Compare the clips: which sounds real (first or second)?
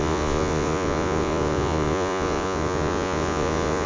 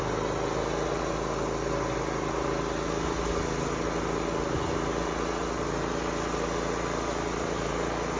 second